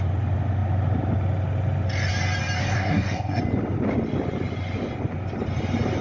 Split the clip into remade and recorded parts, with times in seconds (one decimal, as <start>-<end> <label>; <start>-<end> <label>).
0.0-2.6 recorded; 2.6-3.4 remade; 3.4-6.0 recorded